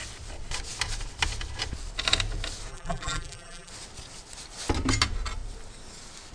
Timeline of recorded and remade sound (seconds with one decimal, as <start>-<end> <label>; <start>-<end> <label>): 0.0-2.7 recorded; 2.7-3.7 remade; 3.7-6.3 recorded